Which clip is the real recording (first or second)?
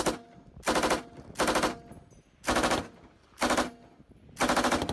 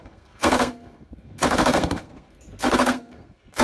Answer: first